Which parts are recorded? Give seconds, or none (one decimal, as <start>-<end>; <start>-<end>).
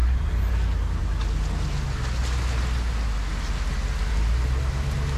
0.5-5.2